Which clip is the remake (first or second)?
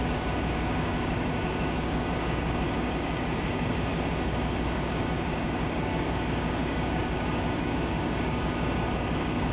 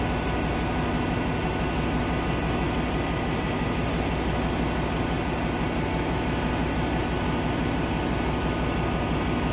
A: first